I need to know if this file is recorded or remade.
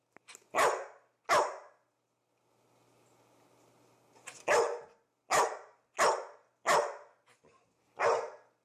recorded